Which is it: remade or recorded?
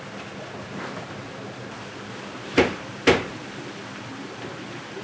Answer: recorded